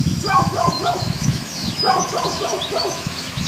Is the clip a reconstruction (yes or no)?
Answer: yes